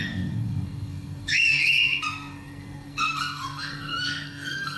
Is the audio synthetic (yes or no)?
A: yes